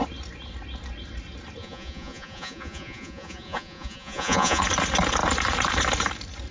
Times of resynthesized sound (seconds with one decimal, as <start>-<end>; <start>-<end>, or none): 1.6-4.6